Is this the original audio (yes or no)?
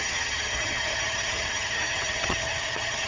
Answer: no